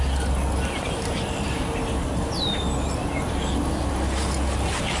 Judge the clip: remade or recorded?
recorded